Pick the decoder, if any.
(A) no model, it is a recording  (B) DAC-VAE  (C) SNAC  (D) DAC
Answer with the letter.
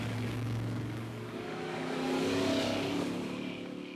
D